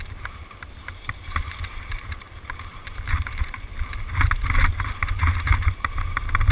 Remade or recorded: remade